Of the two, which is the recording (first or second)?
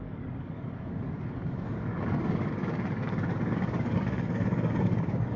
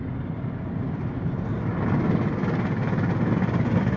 second